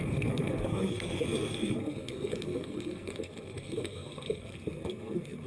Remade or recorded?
remade